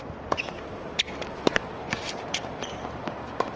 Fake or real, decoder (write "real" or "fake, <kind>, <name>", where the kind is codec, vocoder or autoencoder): fake, vocoder, BigVGAN v2